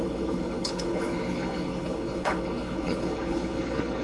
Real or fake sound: fake